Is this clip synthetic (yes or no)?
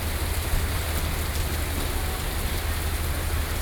no